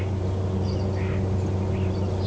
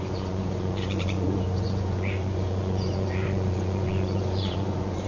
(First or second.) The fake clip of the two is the second